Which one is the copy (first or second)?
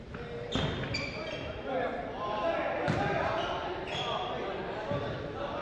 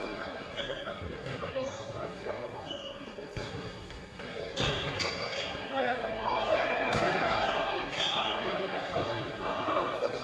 second